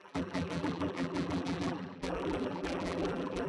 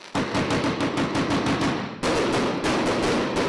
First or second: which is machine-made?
first